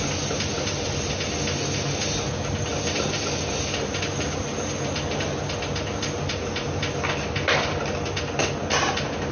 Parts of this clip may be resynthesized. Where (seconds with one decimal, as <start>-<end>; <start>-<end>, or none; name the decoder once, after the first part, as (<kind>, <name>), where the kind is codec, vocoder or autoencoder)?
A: none

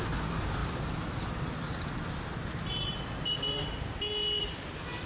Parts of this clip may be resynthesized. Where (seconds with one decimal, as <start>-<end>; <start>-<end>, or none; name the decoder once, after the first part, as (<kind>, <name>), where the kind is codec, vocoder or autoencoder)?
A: none

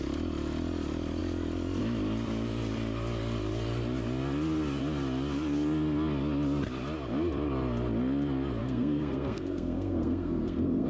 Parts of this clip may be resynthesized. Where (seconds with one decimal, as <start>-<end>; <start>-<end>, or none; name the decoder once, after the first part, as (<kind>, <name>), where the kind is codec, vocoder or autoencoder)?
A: 8.6-10.9 (codec, SNAC)

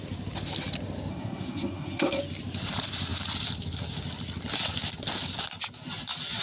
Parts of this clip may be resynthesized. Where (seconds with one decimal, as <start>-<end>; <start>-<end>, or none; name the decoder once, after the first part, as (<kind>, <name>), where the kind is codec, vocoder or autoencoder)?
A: 1.1-2.2 (codec, SNAC)